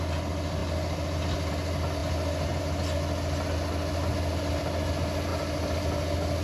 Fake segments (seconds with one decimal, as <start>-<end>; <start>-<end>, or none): none